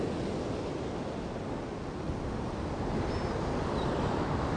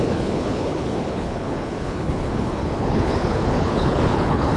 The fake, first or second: second